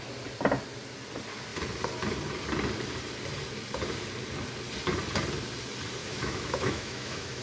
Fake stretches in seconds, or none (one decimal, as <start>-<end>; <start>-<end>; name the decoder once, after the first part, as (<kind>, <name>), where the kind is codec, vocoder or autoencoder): 6.0-7.4 (autoencoder, DAC-VAE)